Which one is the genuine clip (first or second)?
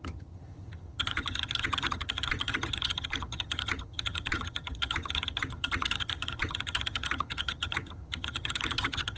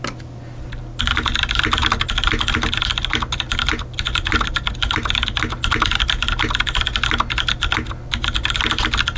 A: second